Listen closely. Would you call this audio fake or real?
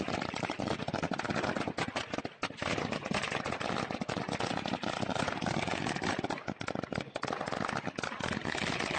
real